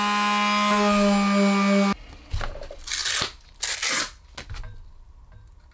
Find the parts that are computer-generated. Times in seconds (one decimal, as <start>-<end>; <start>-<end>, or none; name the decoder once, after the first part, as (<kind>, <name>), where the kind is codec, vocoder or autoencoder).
none